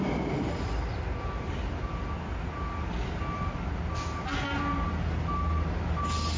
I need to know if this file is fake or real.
real